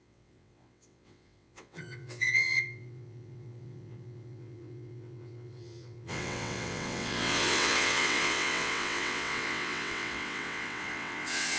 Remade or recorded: remade